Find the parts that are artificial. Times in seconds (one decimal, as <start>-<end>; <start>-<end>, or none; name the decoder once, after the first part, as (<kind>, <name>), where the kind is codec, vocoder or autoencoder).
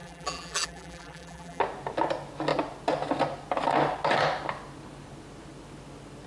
0.0-1.6 (vocoder, BigVGAN v2)